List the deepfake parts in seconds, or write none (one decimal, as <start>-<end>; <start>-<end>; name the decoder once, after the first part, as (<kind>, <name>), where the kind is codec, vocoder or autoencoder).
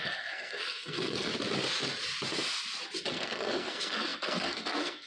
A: 0.0-1.3 (codec, SNAC); 3.1-5.1